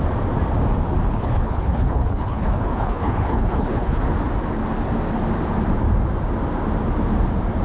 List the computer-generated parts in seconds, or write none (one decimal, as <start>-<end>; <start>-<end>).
1.0-4.0